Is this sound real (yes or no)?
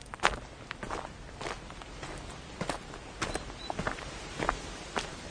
yes